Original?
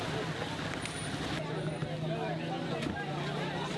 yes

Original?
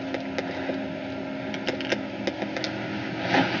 yes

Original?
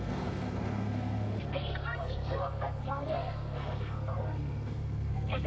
no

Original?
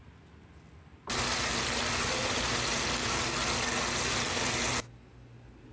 yes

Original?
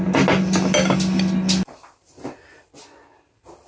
yes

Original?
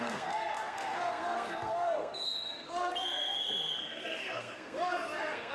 no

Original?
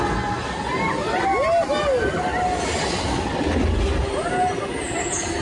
yes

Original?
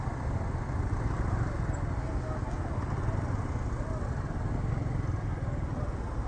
yes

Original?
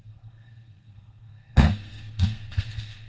no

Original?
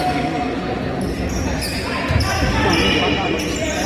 yes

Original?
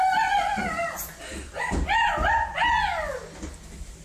yes